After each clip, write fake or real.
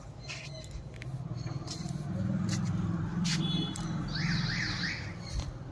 fake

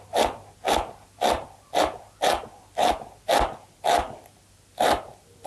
real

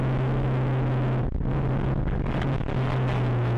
real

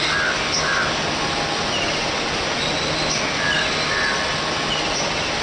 real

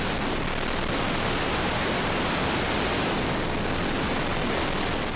real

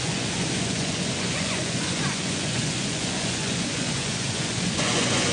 fake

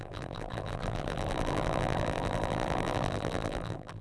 fake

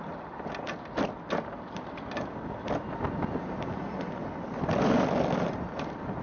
real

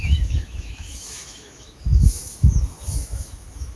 fake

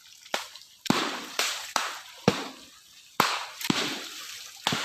real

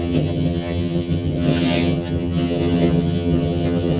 fake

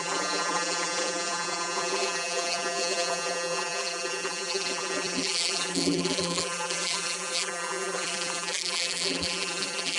fake